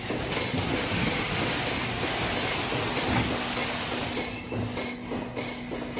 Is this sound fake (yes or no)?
no